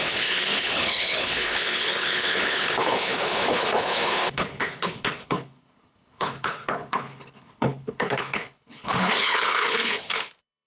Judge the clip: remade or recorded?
remade